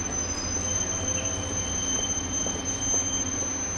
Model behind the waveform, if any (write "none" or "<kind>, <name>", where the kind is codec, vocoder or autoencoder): none